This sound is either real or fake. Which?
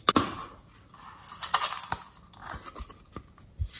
real